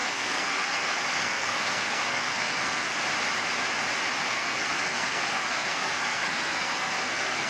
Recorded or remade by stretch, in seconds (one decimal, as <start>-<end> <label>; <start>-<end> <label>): 0.0-2.9 remade; 2.9-4.2 recorded; 4.2-7.5 remade